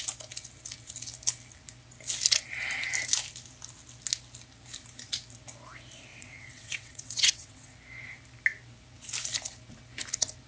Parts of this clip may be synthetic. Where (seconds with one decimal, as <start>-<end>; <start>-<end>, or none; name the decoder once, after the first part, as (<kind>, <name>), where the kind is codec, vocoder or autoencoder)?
6.1-7.7 (vocoder, WaveNeXt)